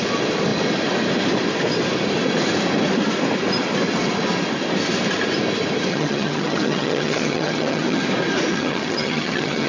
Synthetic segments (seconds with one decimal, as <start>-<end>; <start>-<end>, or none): 5.9-8.0; 8.5-9.7